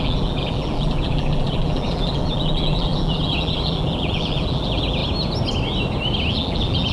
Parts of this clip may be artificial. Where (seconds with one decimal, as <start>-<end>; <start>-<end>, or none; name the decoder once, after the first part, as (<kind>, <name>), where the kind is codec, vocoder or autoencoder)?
0.0-5.0 (vocoder, BigVGAN v2); 6.3-6.9